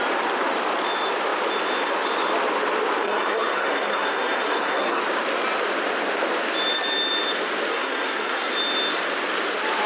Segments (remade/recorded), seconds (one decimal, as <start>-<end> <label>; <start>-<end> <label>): 0.0-3.0 recorded; 3.0-5.0 remade; 5.0-7.7 recorded; 7.7-8.5 remade; 8.5-9.9 recorded